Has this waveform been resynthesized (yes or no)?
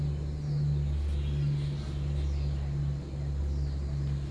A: no